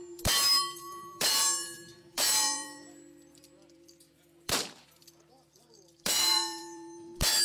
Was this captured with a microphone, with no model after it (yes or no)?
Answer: no